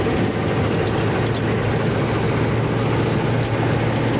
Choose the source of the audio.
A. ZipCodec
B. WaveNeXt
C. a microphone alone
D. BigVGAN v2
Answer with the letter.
C